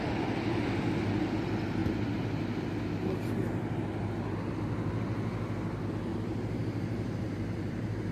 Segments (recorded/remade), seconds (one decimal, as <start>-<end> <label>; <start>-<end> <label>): 0.0-6.1 recorded; 6.1-8.1 remade